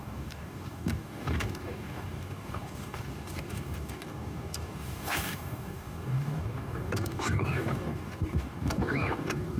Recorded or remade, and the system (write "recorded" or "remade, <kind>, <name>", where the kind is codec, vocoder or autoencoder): remade, codec, DAC